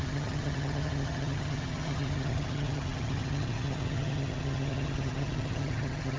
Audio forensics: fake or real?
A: fake